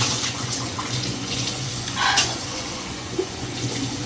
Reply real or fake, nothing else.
fake